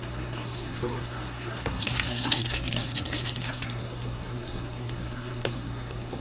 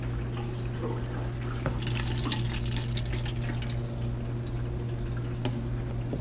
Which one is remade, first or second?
first